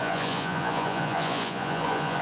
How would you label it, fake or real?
fake